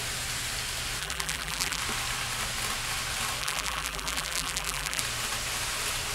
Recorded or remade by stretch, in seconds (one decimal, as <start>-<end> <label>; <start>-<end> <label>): 0.0-1.0 recorded; 1.0-1.8 remade; 1.8-3.4 recorded; 3.4-5.0 remade; 5.0-6.1 recorded